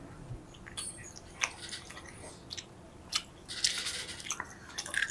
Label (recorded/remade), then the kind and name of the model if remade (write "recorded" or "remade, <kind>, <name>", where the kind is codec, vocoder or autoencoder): recorded